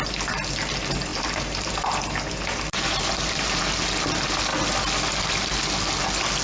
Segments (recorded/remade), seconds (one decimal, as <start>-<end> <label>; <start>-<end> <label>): 0.0-1.1 recorded; 1.1-3.6 remade; 3.6-6.4 recorded